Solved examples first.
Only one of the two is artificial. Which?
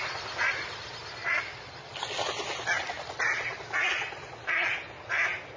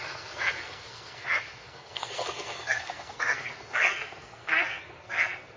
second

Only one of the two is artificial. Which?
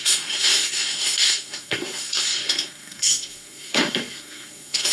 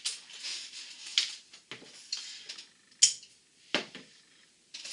first